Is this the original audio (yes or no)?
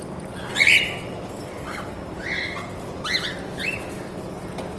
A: yes